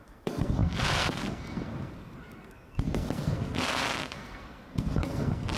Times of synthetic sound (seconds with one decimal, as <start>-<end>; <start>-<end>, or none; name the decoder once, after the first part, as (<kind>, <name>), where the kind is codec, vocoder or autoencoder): 0.0-5.6 (codec, SNAC)